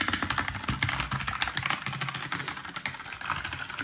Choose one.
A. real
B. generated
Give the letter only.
A